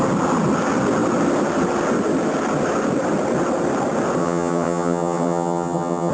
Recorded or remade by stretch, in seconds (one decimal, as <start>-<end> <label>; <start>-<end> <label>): 0.0-4.2 recorded; 4.2-6.1 remade